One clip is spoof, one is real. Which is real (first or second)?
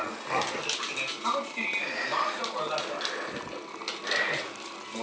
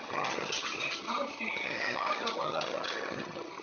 first